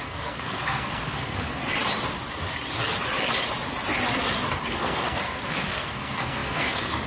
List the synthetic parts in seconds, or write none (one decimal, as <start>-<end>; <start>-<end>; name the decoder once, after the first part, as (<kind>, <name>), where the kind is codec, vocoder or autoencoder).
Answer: 0.0-1.6 (codec, SNAC); 4.6-7.1